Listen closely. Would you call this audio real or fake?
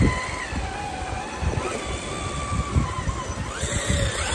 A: real